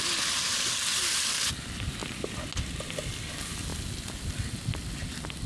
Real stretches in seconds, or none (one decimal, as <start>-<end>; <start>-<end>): 0.0-0.9; 1.5-5.5